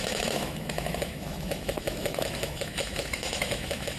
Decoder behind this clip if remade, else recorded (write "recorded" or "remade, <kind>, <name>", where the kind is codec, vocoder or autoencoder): remade, autoencoder, DAC-VAE